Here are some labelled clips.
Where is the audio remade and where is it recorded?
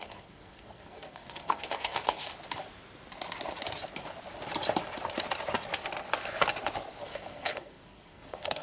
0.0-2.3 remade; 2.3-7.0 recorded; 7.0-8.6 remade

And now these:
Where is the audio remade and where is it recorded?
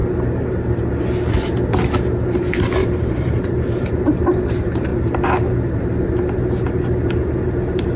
0.0-2.8 recorded; 2.8-3.9 remade; 3.9-8.0 recorded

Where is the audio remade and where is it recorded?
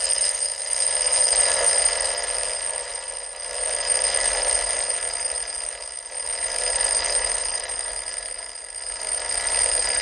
0.0-10.0 recorded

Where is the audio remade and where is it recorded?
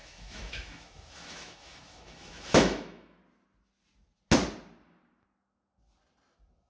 0.0-3.2 remade; 3.2-6.7 recorded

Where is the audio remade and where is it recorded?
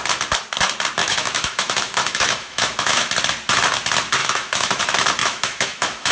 0.0-1.0 recorded; 1.0-3.1 remade; 3.1-4.2 recorded; 4.2-4.8 remade; 4.8-5.2 recorded; 5.2-6.1 remade